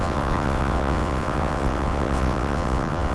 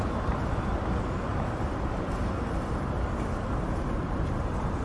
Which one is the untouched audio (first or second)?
second